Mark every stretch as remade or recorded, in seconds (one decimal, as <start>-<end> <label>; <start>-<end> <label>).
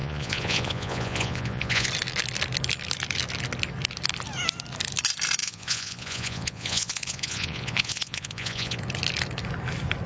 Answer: 0.0-1.9 remade; 1.9-5.4 recorded; 5.4-8.8 remade; 8.8-10.1 recorded